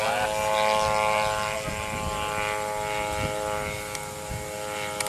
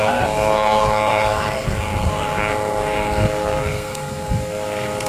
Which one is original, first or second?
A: first